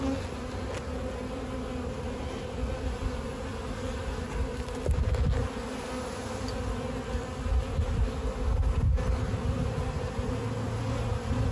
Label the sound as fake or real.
real